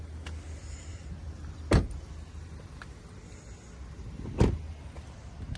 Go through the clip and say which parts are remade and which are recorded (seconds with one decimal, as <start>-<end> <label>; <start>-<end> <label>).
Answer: 0.0-5.6 recorded

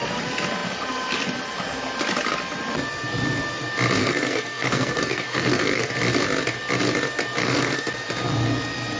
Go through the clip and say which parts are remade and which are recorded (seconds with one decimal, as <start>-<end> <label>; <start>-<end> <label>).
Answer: 0.0-4.0 recorded; 4.0-5.9 remade; 5.9-7.4 recorded; 7.4-7.9 remade; 7.9-9.0 recorded

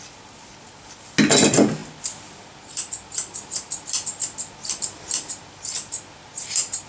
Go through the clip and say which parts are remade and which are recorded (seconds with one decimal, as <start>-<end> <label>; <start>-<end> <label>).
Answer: 0.0-6.9 recorded